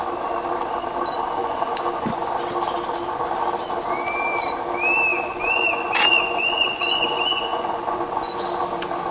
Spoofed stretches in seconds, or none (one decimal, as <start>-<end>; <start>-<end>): 1.4-2.3; 5.1-8.4